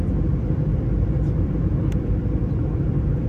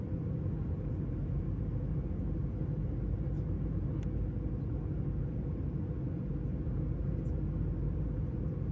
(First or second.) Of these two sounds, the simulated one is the first